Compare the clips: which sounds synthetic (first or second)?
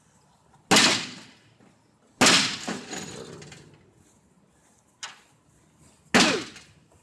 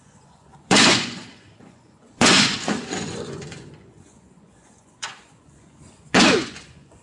second